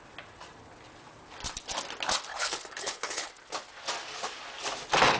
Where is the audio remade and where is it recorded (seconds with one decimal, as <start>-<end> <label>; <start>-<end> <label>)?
0.0-2.3 recorded; 2.3-3.3 remade; 3.3-5.2 recorded